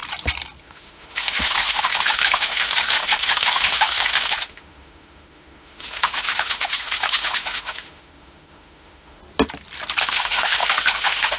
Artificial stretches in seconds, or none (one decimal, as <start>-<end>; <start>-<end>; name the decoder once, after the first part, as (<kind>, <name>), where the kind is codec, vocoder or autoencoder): 0.6-9.2 (autoencoder, DAC-VAE); 10.0-11.4